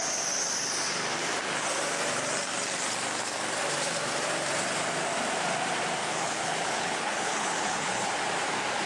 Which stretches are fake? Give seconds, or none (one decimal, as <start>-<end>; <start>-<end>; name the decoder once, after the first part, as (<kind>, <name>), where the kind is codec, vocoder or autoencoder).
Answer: 6.0-8.1 (codec, HILCodec)